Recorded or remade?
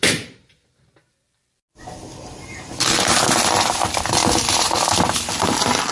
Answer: recorded